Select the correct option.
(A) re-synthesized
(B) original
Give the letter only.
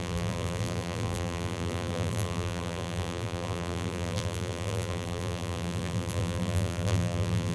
A